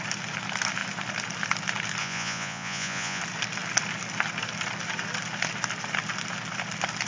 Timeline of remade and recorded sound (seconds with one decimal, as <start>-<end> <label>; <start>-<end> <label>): 0.0-2.0 recorded; 2.0-3.2 remade; 3.2-7.1 recorded